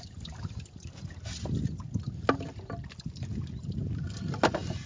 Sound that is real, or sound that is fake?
real